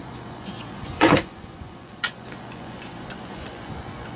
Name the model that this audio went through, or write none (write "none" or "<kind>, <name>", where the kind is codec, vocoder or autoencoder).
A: vocoder, Vocos